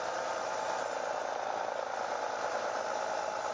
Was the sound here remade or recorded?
recorded